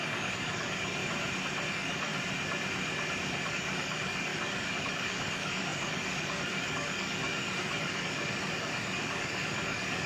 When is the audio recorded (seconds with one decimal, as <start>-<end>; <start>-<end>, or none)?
1.0-1.7; 2.1-3.5